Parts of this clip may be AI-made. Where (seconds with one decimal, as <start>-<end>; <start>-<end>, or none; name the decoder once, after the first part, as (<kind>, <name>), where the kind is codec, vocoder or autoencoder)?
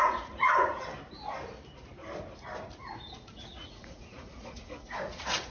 0.0-0.7 (vocoder, Vocos); 2.9-5.5